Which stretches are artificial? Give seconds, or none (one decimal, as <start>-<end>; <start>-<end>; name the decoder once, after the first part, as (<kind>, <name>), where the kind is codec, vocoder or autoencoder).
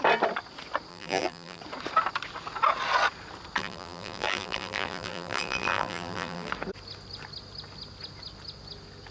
0.9-1.6 (vocoder, BigVGAN v2); 3.6-6.5